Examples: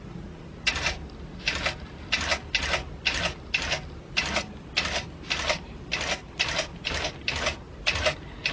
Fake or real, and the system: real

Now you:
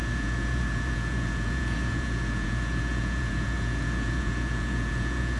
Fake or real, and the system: fake, vocoder, Vocos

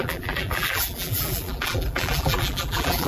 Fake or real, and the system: fake, vocoder, BigVGAN v2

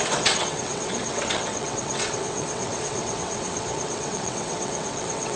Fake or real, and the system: fake, vocoder, WaveNeXt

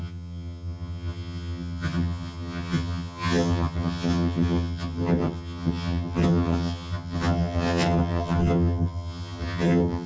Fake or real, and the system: fake, vocoder, HiFi-GAN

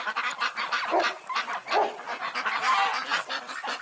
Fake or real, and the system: real